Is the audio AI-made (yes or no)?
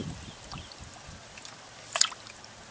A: no